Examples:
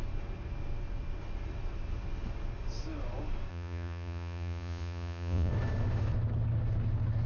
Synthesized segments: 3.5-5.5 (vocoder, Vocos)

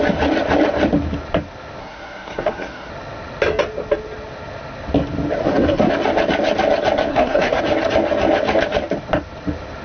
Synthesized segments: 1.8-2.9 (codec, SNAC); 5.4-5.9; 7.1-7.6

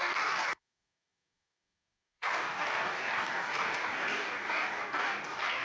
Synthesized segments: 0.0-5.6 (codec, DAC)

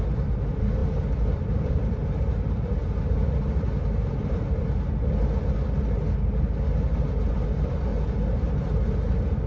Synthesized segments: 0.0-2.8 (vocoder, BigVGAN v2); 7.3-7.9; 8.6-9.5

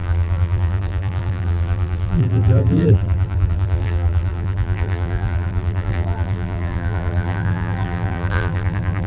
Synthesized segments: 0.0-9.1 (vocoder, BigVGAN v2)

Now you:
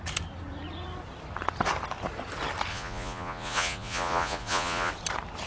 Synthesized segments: 2.7-4.9 (vocoder, Vocos)